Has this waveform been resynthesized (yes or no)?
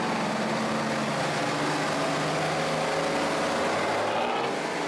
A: no